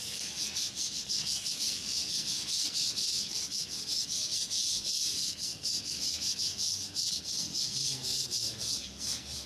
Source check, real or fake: fake